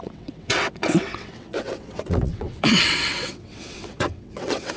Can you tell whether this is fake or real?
fake